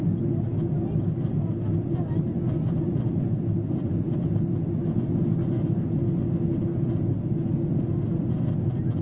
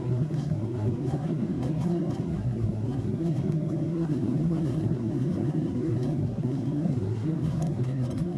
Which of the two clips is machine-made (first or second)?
second